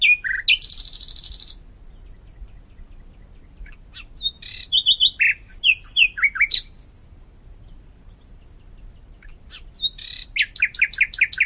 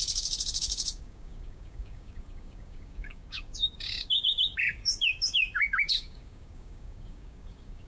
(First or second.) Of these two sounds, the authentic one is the first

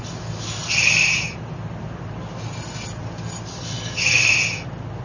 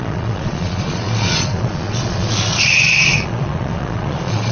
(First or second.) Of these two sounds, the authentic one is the first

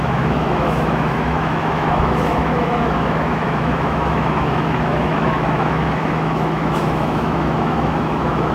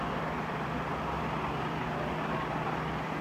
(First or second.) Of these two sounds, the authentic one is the second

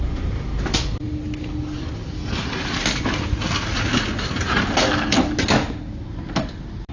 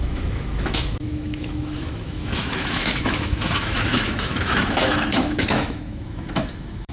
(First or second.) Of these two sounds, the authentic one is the first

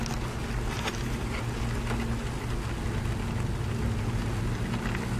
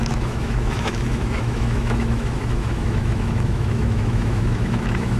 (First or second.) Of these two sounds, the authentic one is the first